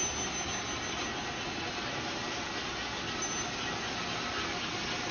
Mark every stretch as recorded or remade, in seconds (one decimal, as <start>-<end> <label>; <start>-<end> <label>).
0.0-5.1 recorded